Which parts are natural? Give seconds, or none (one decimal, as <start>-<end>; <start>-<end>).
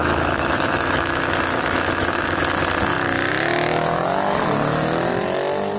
2.4-5.8